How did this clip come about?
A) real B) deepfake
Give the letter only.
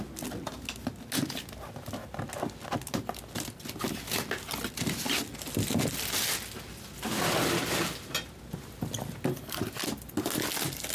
A